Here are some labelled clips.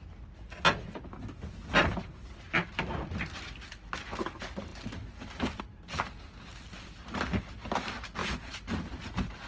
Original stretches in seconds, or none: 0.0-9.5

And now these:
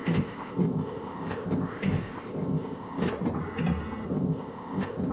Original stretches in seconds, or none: 3.1-4.1

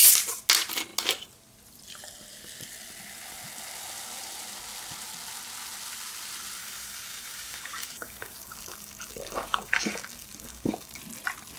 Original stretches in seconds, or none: 0.0-6.6; 11.0-11.6

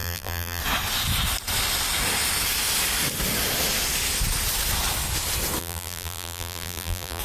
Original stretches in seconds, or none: 0.6-5.6

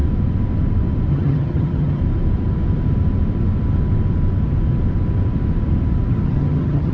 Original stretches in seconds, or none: 0.0-1.1; 2.0-6.1

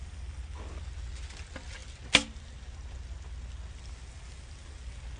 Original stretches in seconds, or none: 0.0-5.2